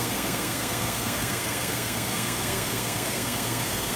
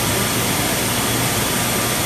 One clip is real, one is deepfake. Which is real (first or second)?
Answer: second